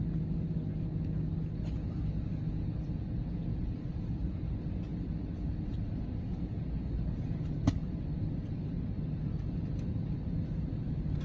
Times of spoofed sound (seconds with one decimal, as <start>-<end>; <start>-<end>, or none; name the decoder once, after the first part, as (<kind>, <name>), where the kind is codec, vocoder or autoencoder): 3.5-4.5 (vocoder, BigVGAN v2)